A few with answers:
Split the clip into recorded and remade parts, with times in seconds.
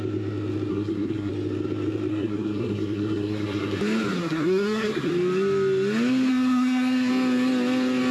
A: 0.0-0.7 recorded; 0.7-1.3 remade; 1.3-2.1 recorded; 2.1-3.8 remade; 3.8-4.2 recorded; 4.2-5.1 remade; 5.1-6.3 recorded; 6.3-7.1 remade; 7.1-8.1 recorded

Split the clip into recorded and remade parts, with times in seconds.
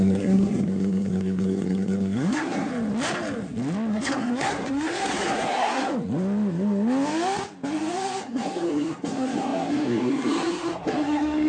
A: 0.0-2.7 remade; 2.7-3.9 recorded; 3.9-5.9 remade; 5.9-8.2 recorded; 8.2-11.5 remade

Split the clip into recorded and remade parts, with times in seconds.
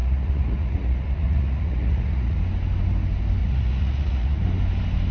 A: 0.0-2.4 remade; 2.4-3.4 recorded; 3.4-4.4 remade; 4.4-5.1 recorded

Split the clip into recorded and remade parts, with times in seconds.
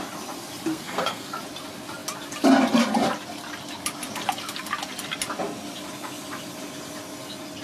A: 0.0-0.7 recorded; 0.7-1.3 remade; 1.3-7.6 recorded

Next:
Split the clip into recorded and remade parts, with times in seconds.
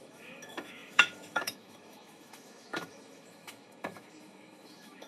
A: 0.0-5.1 remade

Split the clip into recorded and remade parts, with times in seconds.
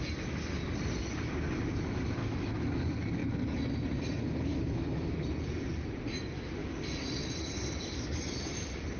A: 0.0-2.2 recorded; 2.2-2.8 remade; 2.8-4.5 recorded; 4.5-5.1 remade; 5.1-9.0 recorded